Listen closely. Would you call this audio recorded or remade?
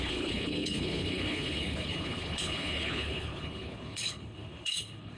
remade